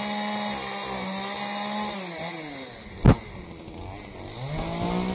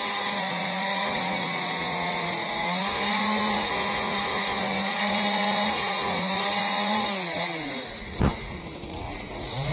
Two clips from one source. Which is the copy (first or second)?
second